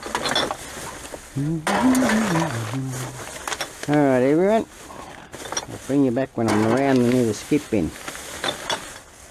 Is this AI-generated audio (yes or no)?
no